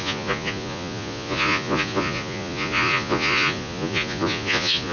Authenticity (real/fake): fake